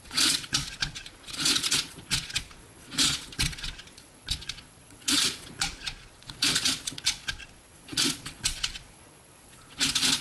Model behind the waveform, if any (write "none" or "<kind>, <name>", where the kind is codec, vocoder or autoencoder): vocoder, Vocos